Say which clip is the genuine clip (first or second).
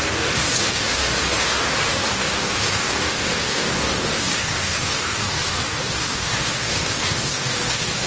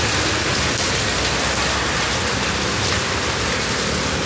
second